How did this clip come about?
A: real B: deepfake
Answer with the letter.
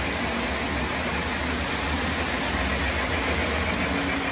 A